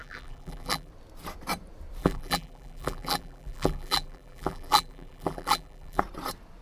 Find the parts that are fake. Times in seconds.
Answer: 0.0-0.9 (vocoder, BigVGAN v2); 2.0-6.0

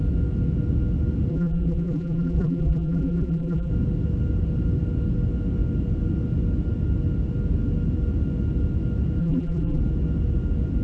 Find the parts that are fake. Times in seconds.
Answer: 1.3-3.7 (vocoder, BigVGAN v2); 9.2-9.8

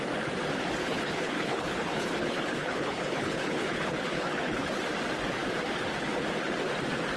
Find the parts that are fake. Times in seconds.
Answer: 0.8-4.7 (codec, HILCodec)

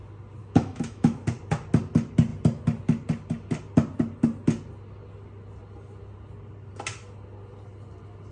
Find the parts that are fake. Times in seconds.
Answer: 0.4-1.2 (autoencoder, DAC-VAE)

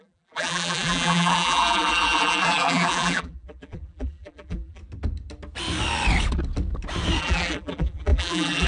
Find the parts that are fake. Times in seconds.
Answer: 0.0-4.8 (vocoder, BigVGAN v2); 7.2-8.7